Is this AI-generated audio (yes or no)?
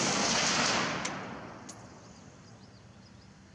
no